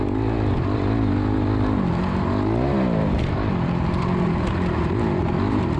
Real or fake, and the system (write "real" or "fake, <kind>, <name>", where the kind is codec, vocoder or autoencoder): real